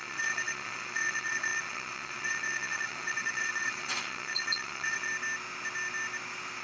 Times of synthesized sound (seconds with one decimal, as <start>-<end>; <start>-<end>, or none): 0.0-5.1